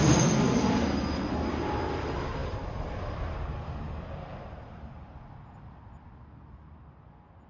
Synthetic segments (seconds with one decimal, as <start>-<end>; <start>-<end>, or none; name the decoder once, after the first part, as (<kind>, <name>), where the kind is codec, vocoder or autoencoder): 2.4-3.2 (vocoder, BigVGAN v2); 4.3-5.1